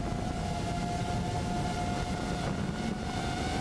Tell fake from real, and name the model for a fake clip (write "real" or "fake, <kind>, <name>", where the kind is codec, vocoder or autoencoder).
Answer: real